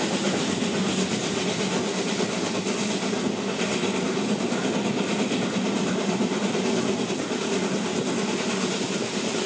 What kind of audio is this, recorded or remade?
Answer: recorded